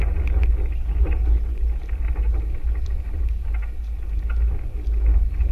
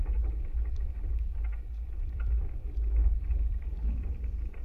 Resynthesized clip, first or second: second